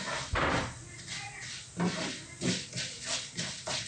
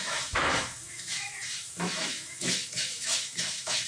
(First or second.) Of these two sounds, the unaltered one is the first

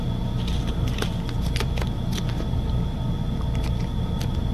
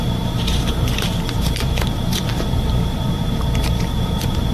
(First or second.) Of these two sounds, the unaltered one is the first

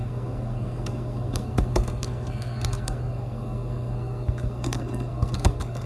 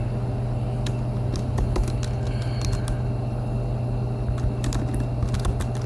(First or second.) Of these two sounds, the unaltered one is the second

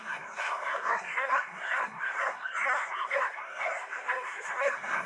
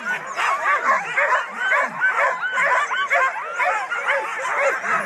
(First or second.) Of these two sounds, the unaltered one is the second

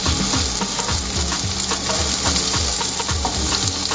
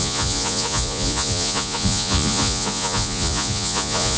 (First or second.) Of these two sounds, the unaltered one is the first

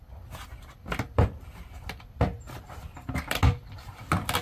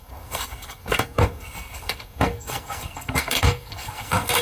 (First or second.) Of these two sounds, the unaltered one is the first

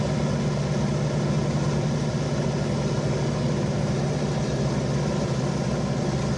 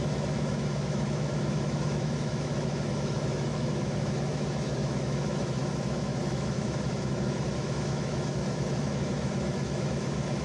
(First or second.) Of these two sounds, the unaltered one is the first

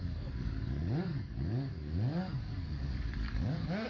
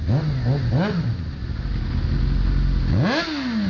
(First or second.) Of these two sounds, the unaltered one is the second